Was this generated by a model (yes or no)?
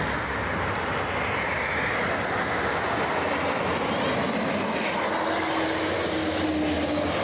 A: no